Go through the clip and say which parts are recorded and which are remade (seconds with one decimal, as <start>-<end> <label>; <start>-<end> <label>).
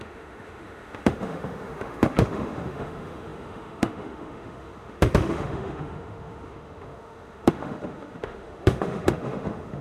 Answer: 0.0-9.8 remade